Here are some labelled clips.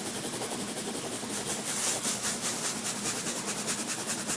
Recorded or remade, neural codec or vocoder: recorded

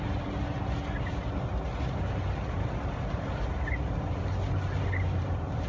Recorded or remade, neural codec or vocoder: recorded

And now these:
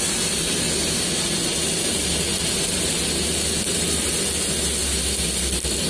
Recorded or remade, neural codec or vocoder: recorded